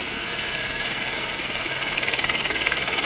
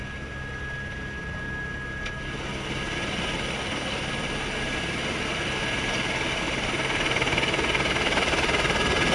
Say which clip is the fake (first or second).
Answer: first